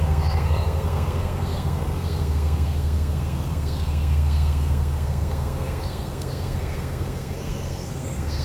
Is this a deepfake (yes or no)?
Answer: yes